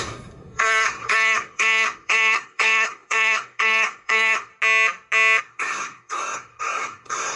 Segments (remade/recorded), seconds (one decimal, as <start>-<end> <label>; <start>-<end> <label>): 0.0-4.5 remade; 4.5-5.4 recorded; 5.4-7.4 remade